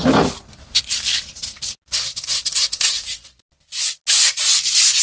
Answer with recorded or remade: recorded